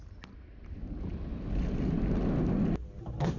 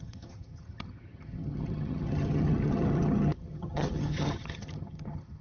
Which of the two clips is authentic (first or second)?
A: first